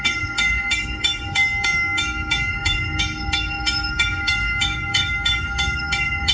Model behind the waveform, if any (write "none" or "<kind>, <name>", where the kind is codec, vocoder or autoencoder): codec, DAC